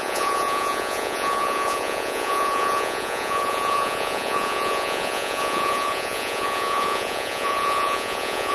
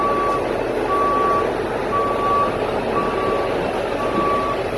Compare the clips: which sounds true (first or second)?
second